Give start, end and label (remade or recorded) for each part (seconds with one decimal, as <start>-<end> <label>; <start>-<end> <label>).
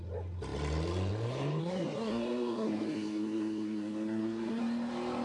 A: 0.0-1.6 recorded; 1.6-4.6 remade; 4.6-5.2 recorded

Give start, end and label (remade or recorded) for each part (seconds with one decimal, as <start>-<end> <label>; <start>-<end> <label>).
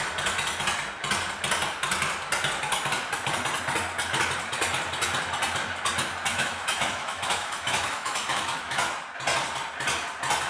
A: 0.0-6.3 recorded; 6.3-8.9 remade; 8.9-10.5 recorded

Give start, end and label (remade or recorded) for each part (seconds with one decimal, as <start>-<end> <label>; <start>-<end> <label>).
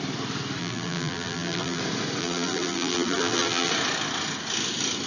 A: 0.0-0.6 recorded; 0.6-1.8 remade; 1.8-2.2 recorded; 2.2-3.7 remade; 3.7-5.1 recorded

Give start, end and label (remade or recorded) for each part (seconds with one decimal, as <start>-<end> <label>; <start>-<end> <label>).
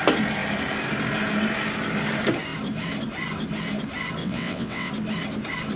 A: 0.0-4.2 recorded; 4.2-4.9 remade; 4.9-5.8 recorded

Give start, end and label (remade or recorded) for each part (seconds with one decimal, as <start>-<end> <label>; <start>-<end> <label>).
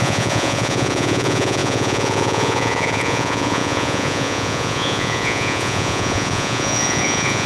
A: 0.0-7.5 remade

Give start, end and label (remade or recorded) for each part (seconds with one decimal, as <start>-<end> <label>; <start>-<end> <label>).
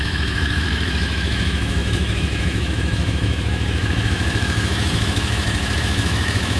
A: 0.0-6.6 remade